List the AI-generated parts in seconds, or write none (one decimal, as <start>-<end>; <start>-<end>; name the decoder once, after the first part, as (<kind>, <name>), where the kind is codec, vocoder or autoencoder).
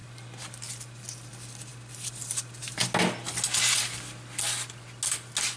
none